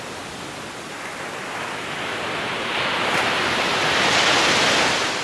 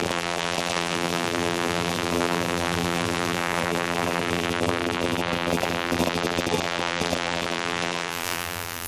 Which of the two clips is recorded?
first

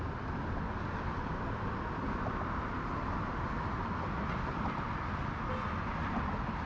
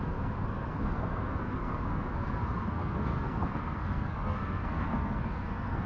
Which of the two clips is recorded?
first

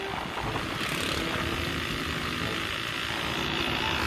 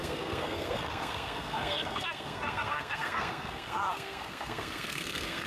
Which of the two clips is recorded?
first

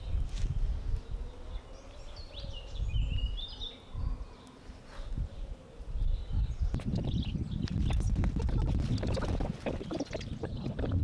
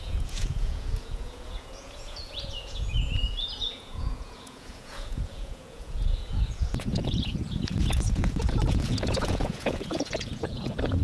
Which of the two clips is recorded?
first